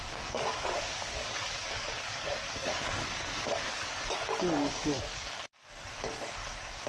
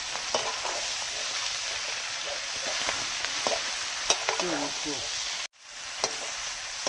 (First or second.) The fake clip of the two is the first